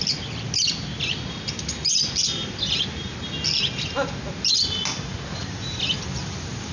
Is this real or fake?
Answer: real